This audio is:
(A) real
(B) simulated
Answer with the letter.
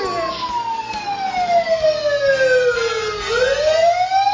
A